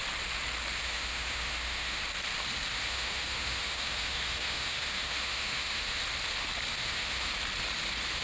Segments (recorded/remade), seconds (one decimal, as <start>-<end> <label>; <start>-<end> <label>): 0.0-0.8 recorded; 0.8-2.0 remade; 2.0-2.8 recorded; 2.8-6.0 remade; 6.0-6.7 recorded; 6.7-7.3 remade; 7.3-8.2 recorded